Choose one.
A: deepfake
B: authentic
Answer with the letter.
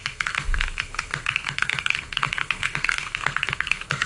A